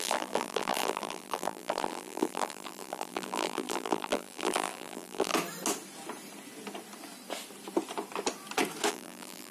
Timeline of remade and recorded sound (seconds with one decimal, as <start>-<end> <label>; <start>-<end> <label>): 0.0-5.3 remade; 5.3-8.9 recorded; 8.9-9.5 remade